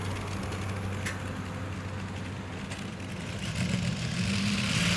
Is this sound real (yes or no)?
yes